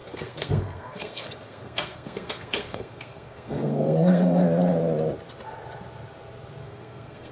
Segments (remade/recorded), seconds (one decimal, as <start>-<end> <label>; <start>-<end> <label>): 0.0-4.4 remade; 4.4-6.6 recorded; 6.6-7.3 remade